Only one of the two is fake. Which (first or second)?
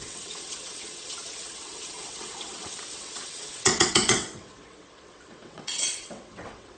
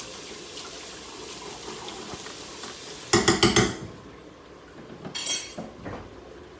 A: first